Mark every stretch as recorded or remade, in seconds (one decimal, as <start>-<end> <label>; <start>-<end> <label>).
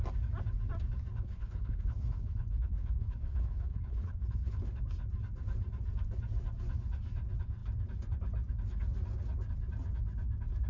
0.0-1.1 recorded; 1.1-4.8 remade; 4.8-10.7 recorded